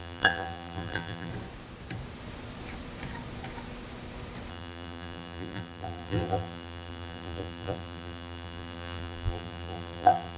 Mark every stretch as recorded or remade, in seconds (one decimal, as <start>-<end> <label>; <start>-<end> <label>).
0.0-1.3 remade; 1.3-4.5 recorded; 4.5-10.4 remade